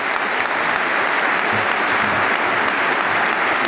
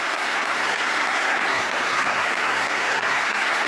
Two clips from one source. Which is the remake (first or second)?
second